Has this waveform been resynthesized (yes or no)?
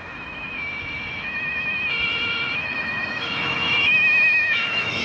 yes